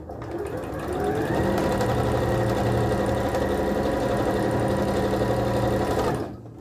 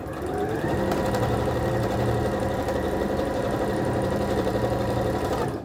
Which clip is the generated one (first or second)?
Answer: second